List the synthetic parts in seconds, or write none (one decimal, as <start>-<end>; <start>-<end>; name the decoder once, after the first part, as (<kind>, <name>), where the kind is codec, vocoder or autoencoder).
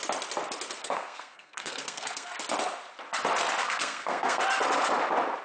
0.8-2.3 (codec, SNAC); 3.6-4.4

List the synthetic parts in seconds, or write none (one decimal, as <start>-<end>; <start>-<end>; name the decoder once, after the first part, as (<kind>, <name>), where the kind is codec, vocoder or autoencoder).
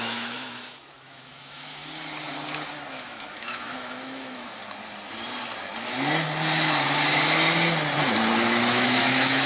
0.0-1.8 (autoencoder, DAC-VAE); 2.9-4.6; 8.7-9.5